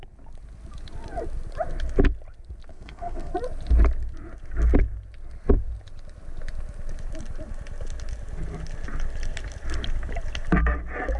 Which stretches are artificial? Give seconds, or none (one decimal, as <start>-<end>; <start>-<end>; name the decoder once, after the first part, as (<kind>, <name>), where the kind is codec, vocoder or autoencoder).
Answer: 2.7-3.3 (codec, SNAC)